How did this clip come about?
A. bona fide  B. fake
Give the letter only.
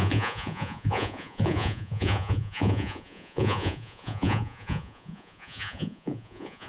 B